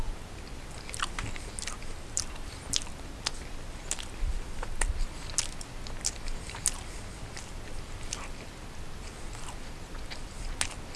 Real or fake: real